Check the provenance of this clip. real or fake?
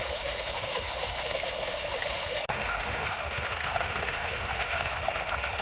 fake